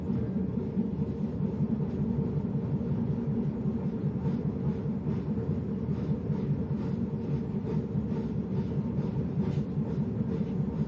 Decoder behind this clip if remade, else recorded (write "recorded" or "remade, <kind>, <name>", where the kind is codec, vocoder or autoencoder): recorded